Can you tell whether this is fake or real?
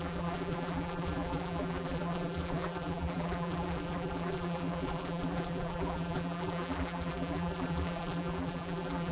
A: fake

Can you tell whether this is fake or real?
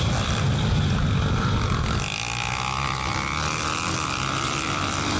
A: real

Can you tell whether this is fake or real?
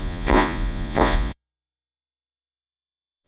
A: fake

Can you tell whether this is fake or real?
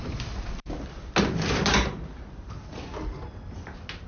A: real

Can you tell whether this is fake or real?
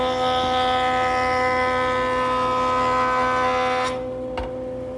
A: real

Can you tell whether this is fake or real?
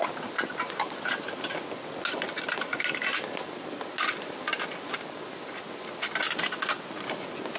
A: real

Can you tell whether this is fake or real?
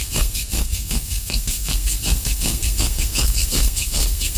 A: fake